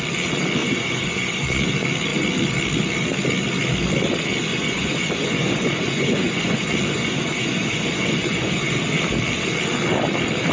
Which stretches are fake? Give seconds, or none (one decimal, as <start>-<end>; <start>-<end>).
0.6-1.7; 4.5-8.8